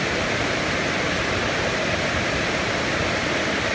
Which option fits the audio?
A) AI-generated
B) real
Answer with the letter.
B